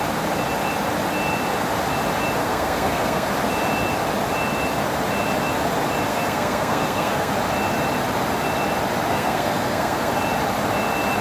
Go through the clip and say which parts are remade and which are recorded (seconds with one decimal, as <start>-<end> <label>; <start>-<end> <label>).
0.0-2.4 recorded; 2.4-3.3 remade; 3.3-6.1 recorded; 6.1-7.3 remade; 7.3-9.1 recorded; 9.1-10.1 remade; 10.1-11.2 recorded